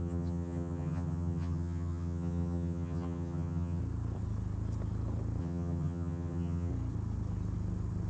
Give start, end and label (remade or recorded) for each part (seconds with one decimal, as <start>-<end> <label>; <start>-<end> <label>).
0.0-3.8 remade; 3.8-5.4 recorded; 5.4-6.7 remade; 6.7-8.1 recorded